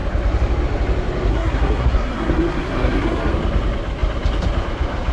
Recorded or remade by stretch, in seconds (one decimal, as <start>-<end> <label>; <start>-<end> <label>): 0.0-1.3 recorded; 1.3-3.3 remade; 3.3-5.1 recorded